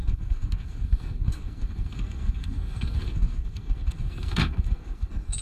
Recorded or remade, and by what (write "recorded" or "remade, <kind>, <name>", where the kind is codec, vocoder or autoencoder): remade, codec, SNAC